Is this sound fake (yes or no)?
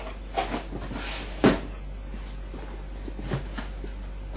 no